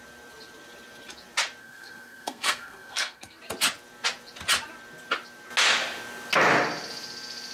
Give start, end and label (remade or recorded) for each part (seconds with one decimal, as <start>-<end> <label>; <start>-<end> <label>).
0.0-1.6 recorded; 1.6-3.4 remade; 3.4-7.5 recorded